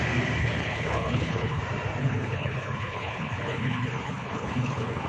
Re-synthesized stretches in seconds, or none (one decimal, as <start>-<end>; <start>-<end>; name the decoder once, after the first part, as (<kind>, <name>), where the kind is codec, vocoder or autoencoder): 0.4-1.6 (codec, HILCodec); 2.0-5.1